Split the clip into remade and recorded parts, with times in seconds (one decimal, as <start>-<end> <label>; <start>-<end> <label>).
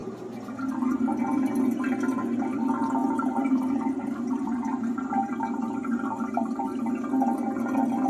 0.0-3.0 recorded; 3.0-6.9 remade; 6.9-8.1 recorded